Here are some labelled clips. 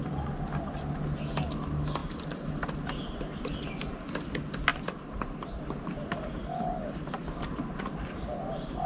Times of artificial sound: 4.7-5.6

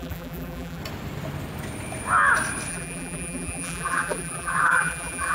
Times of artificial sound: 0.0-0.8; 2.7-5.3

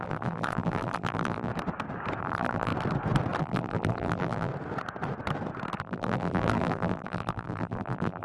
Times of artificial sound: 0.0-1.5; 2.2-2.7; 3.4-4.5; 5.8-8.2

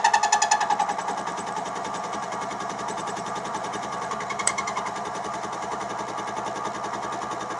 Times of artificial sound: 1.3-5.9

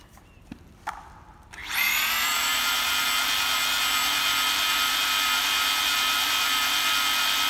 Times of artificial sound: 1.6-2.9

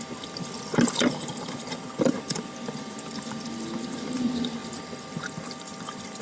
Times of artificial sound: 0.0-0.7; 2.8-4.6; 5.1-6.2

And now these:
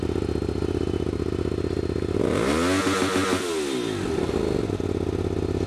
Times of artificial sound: none